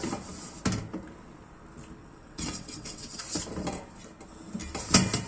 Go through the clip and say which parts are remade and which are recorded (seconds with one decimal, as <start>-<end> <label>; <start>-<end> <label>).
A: 0.0-2.0 recorded; 2.0-3.2 remade; 3.2-5.3 recorded